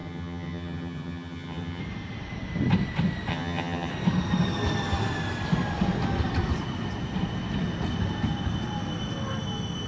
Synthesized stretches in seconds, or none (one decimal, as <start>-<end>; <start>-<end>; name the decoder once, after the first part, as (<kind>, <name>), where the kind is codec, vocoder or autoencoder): 0.0-1.8 (vocoder, HiFi-GAN); 3.3-3.9